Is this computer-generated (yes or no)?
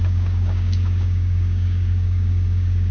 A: yes